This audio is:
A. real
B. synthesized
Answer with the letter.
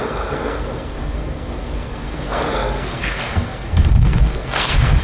B